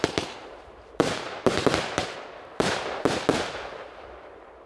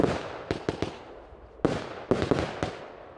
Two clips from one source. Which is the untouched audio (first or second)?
second